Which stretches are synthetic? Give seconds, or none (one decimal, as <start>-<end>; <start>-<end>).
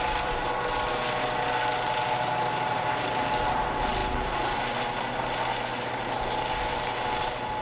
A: none